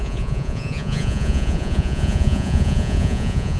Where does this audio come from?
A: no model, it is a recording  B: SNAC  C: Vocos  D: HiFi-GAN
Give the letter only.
C